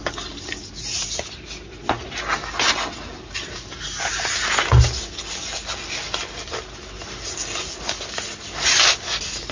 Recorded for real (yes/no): yes